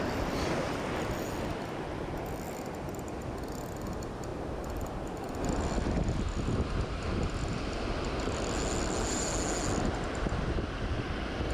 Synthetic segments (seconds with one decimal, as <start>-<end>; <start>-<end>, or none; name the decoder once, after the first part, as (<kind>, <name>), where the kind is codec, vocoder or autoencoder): none

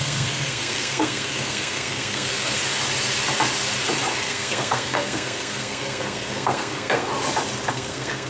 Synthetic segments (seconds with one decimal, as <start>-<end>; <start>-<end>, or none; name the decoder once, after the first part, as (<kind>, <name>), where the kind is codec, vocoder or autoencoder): 0.0-2.6 (codec, SNAC); 4.2-7.1; 7.7-8.3

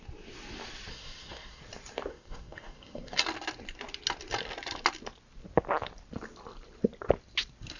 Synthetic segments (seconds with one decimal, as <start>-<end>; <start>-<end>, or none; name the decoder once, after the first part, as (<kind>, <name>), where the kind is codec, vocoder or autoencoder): 0.9-1.6 (codec, SNAC); 2.1-3.2